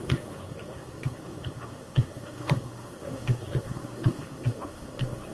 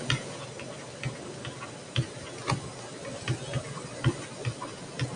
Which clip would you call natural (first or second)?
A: second